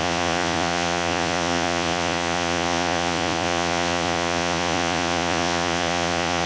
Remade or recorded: remade